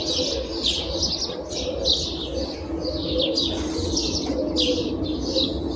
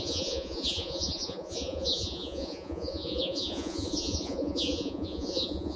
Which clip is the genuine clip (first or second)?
first